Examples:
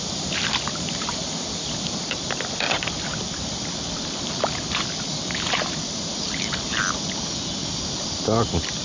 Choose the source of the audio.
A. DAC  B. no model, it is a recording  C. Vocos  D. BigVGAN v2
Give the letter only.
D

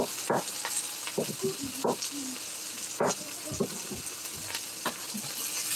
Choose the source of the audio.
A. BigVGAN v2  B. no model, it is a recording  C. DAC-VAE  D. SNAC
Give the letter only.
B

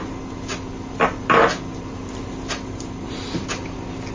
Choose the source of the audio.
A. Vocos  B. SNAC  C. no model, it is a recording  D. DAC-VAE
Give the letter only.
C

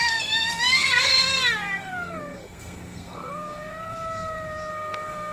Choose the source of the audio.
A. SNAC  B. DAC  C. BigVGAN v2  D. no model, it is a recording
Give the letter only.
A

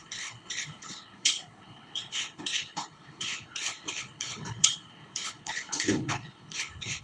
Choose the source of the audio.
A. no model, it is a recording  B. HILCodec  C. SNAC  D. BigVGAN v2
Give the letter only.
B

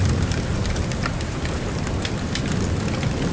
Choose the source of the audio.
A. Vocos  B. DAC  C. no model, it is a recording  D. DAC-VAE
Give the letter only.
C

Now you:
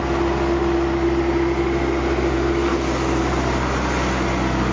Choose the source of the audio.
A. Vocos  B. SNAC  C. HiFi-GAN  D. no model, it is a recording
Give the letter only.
D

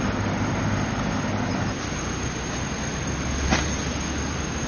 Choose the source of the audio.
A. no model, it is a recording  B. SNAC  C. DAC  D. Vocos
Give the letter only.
A